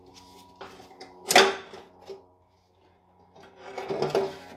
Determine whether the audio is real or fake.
real